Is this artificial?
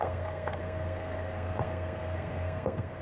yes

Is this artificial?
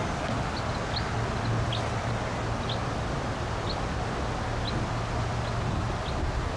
no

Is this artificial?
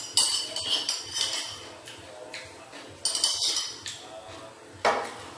no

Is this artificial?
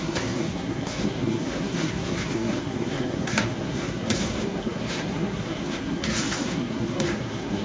yes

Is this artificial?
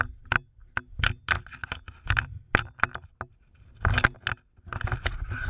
no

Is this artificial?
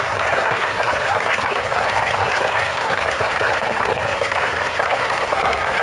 yes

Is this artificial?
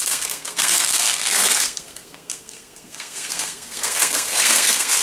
yes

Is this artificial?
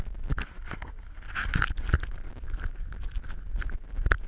no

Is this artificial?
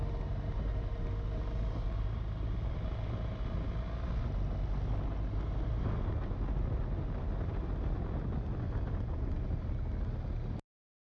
no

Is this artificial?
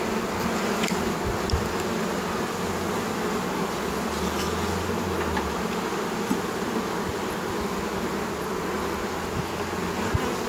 no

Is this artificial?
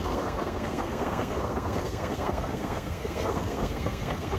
yes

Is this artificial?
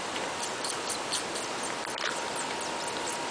no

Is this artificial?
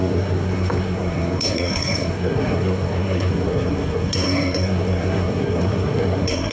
yes